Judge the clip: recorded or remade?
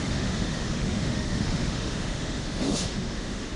remade